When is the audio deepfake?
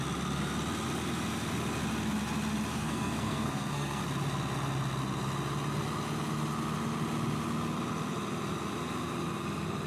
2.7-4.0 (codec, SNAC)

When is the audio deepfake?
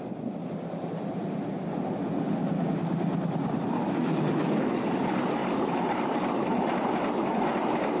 0.4-0.9 (vocoder, BigVGAN v2); 5.4-6.2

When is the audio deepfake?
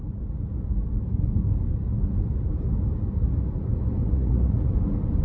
4.0-4.7 (vocoder, Vocos)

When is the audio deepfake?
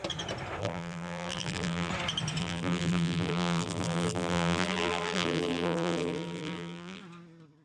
0.6-1.9 (vocoder, BigVGAN v2); 2.4-7.0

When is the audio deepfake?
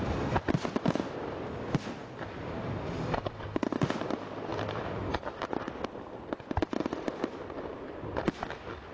4.5-8.5 (vocoder, BigVGAN v2)